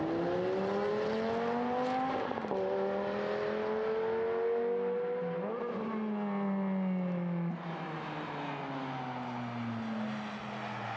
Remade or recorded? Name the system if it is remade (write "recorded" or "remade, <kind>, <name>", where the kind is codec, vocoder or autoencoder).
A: recorded